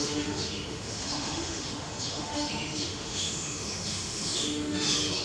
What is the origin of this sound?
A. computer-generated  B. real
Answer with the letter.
A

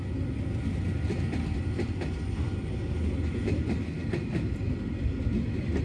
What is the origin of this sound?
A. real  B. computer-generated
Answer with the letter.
A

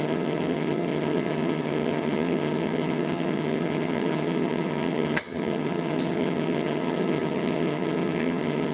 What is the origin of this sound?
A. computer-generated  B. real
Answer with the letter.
A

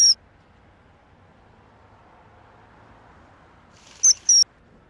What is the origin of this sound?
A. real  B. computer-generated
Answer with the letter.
A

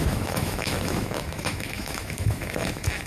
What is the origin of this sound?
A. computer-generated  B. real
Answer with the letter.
A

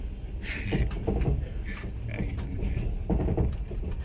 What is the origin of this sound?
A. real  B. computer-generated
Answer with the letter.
A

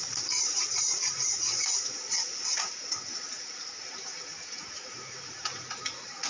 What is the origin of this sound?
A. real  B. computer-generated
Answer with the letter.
B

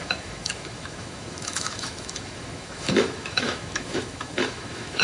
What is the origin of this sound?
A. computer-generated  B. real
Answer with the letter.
A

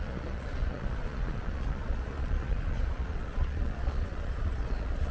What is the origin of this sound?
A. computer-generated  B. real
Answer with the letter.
A